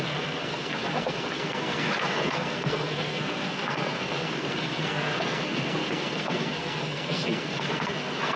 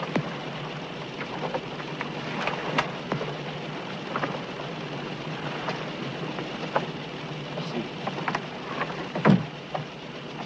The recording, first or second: second